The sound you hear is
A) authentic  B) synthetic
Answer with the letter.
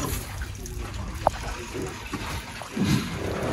B